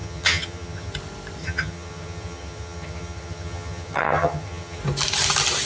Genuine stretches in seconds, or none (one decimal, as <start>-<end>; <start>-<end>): 0.9-1.4; 4.8-5.7